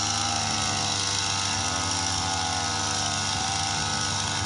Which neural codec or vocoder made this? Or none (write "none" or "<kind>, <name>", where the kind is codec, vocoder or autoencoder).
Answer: none